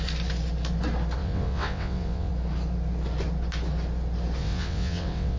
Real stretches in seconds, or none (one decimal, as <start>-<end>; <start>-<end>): 0.0-1.2; 2.3-4.4